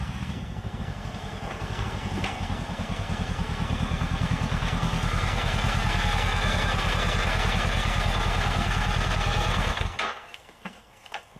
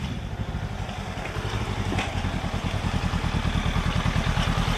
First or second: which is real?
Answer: second